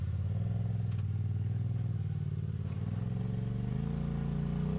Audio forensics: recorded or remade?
recorded